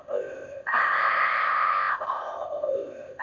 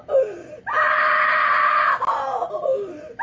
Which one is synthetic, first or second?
first